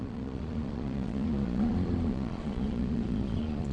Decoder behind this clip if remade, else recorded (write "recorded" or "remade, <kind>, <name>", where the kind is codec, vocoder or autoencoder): remade, vocoder, Vocos